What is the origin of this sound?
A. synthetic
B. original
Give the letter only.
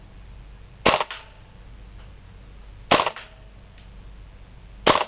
B